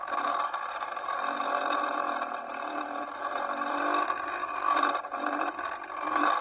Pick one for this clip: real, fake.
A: real